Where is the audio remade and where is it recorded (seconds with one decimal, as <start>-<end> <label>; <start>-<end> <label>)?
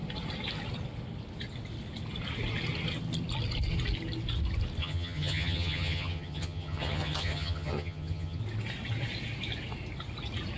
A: 0.0-4.8 recorded; 4.8-8.4 remade; 8.4-10.6 recorded